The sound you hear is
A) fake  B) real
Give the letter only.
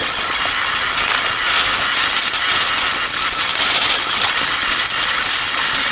B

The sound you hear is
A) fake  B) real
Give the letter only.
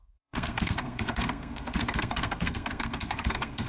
A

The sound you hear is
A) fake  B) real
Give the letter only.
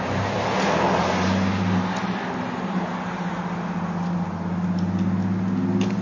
B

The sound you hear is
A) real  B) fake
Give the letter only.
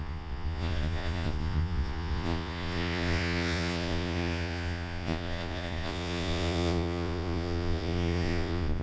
B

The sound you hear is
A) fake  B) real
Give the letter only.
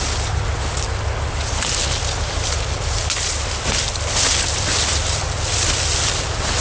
B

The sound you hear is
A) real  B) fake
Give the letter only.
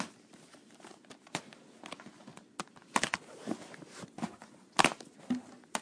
A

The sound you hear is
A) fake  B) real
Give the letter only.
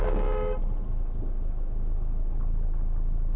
B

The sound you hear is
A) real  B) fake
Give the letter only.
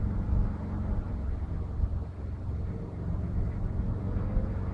A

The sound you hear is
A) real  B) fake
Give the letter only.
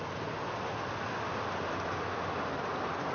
A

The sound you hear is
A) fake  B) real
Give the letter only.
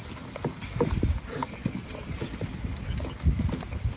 B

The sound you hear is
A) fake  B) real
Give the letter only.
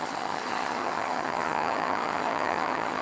A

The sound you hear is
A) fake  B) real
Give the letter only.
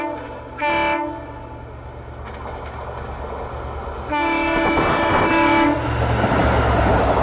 B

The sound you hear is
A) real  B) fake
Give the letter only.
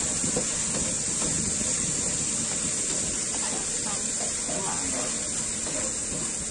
A